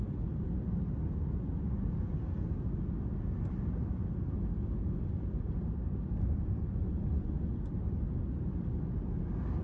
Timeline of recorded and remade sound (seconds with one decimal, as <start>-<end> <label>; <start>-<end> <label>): 0.0-9.6 recorded